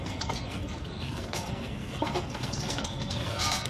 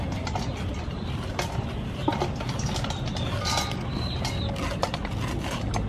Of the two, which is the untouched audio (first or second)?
second